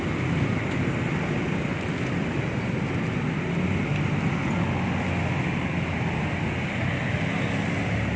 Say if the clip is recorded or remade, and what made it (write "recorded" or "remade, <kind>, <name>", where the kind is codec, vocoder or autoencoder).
recorded